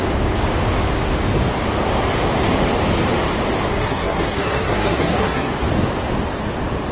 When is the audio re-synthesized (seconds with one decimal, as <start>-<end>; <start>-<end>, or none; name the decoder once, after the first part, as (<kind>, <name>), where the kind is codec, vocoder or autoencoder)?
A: 3.7-5.5 (codec, SNAC)